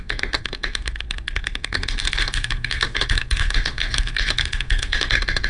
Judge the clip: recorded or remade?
remade